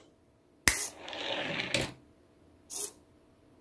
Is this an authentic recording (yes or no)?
yes